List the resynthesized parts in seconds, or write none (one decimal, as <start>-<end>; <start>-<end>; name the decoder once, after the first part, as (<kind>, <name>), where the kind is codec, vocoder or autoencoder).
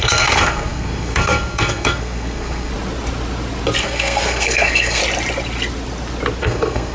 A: 0.0-2.7 (codec, SNAC); 3.8-5.0; 6.4-6.9